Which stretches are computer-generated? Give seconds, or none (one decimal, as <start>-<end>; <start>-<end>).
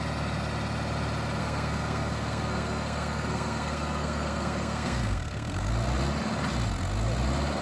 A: 1.4-5.7